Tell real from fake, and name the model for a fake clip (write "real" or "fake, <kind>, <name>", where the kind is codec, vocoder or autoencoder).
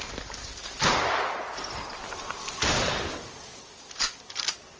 real